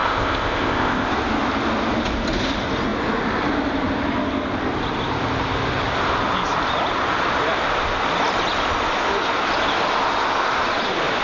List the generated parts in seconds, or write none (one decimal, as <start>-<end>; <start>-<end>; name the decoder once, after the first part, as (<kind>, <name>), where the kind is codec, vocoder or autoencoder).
0.0-1.1 (codec, ZipCodec)